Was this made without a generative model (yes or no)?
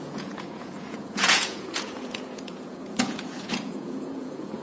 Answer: no